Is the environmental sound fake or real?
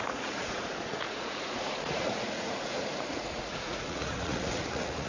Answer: fake